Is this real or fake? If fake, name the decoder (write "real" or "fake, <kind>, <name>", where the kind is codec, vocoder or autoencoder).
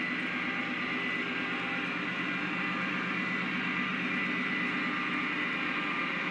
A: real